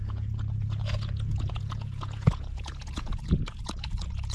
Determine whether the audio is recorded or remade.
remade